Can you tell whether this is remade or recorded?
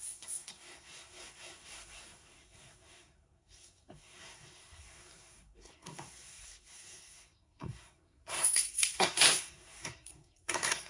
remade